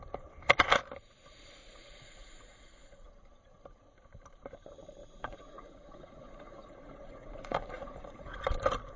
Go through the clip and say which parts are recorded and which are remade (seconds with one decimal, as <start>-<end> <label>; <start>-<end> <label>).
0.0-1.6 recorded; 1.6-3.1 remade; 3.1-5.0 recorded; 5.0-8.4 remade; 8.4-9.0 recorded